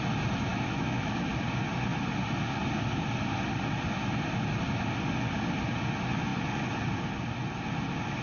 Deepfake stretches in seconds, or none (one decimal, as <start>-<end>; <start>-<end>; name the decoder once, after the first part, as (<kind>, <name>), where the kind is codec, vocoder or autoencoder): 0.5-1.3 (autoencoder, DAC-VAE)